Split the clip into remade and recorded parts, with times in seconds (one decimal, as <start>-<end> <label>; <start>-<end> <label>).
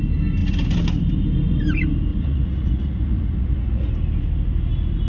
0.0-2.1 recorded; 2.1-3.9 remade; 3.9-5.1 recorded